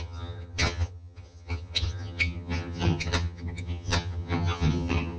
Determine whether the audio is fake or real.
fake